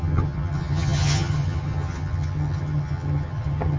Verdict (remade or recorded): remade